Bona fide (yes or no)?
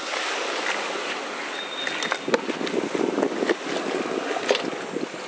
yes